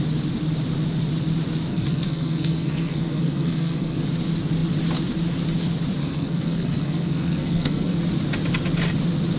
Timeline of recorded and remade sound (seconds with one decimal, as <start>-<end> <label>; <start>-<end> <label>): 0.0-1.7 recorded; 1.7-4.0 remade; 4.0-6.0 recorded; 6.0-8.0 remade; 8.0-9.4 recorded